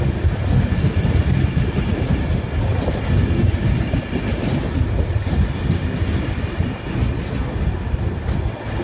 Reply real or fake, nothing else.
real